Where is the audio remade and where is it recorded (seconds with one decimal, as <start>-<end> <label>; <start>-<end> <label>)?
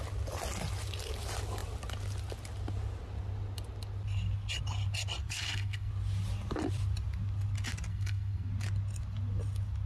0.0-5.2 recorded; 5.2-5.9 remade; 5.9-7.9 recorded; 7.9-8.5 remade; 8.5-9.9 recorded